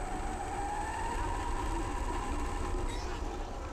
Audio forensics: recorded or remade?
recorded